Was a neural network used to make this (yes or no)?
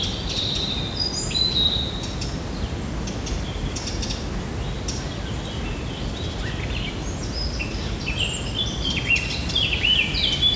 no